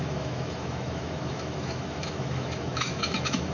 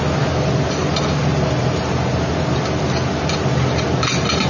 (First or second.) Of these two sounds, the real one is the second